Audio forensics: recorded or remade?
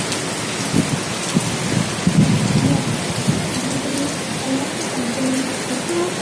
recorded